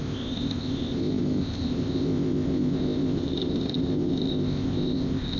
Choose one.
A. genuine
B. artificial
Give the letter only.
B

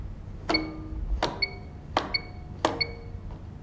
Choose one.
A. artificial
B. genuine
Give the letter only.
B